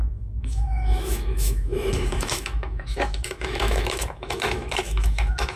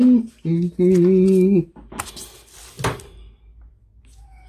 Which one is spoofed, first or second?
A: first